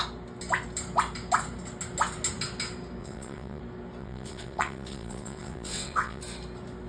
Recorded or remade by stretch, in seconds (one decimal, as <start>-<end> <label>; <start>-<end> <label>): 0.0-3.0 recorded; 3.0-3.6 remade; 3.6-4.0 recorded; 4.0-6.2 remade; 6.2-6.9 recorded